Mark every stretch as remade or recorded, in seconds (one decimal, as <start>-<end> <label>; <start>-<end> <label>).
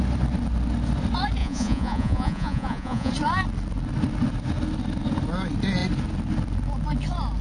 0.0-1.4 recorded; 1.4-3.1 remade; 3.1-7.4 recorded